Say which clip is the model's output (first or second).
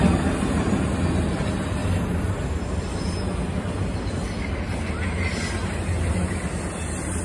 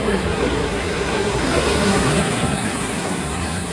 second